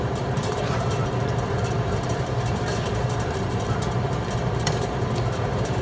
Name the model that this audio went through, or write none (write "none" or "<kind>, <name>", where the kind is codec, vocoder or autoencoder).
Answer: vocoder, BigVGAN v2